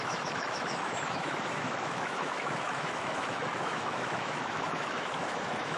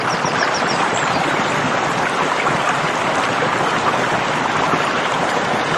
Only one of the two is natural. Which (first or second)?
second